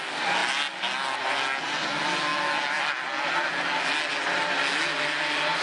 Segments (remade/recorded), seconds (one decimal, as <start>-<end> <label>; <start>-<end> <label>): 0.0-5.6 recorded